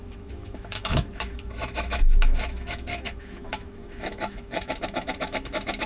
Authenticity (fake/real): fake